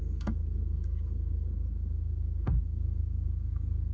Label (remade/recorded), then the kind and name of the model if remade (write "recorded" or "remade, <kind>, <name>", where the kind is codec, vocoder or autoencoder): remade, codec, SNAC